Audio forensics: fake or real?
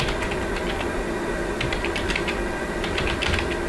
real